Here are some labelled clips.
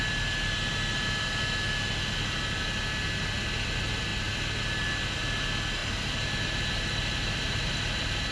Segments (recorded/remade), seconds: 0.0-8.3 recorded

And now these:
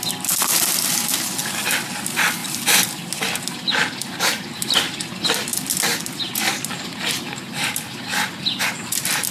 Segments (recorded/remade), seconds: 0.0-9.3 recorded

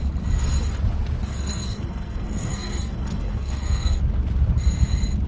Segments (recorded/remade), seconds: 0.0-1.3 recorded; 1.3-4.0 remade; 4.0-5.3 recorded